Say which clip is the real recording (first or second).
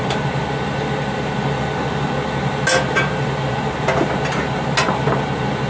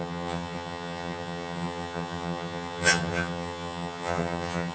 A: first